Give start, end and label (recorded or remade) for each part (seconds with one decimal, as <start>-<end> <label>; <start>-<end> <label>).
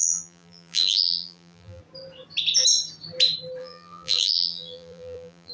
0.0-1.8 remade; 1.8-3.6 recorded; 3.6-5.5 remade